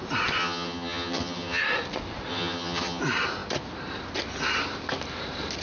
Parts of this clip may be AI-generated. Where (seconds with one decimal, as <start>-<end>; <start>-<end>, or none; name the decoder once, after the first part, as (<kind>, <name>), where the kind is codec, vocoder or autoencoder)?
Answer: 0.4-1.6 (vocoder, HiFi-GAN); 2.3-3.0